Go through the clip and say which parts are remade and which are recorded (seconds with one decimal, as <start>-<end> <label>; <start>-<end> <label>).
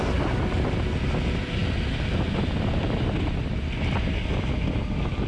0.0-5.3 recorded